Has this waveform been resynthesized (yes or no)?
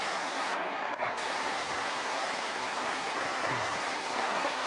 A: yes